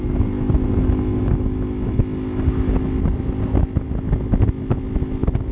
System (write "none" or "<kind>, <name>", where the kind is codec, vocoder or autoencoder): none